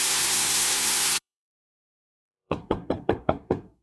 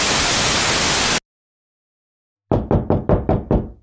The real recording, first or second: second